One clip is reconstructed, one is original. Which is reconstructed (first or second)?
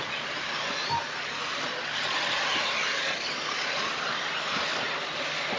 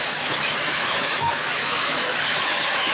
second